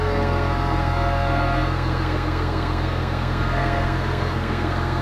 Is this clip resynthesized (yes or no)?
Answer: yes